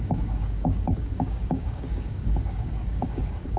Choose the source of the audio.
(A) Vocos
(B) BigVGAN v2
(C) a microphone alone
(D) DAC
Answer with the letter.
D